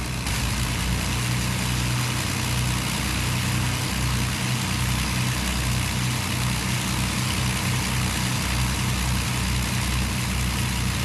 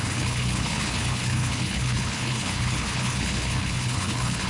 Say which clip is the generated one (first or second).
second